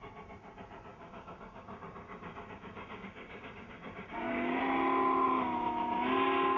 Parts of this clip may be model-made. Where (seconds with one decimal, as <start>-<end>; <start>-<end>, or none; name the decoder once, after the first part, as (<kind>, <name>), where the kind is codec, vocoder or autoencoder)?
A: 0.9-4.6 (codec, DAC)